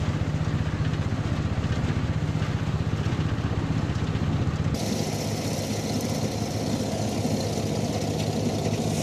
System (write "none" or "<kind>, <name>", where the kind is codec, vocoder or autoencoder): none